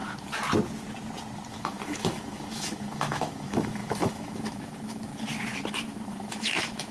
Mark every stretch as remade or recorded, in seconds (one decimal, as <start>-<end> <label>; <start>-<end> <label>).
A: 0.0-1.5 recorded; 1.5-5.1 remade; 5.1-5.7 recorded; 5.7-6.9 remade